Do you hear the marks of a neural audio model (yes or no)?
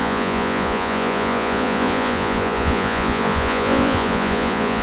yes